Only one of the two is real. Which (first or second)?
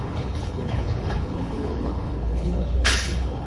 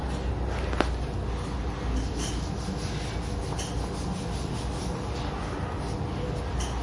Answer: second